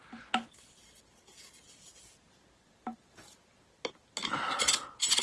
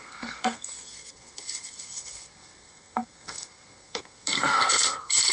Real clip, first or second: first